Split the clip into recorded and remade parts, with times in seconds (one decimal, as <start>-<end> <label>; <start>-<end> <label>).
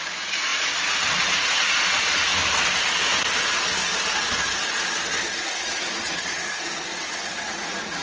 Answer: 0.0-0.5 remade; 0.5-1.2 recorded; 1.2-2.3 remade; 2.3-5.5 recorded; 5.5-8.0 remade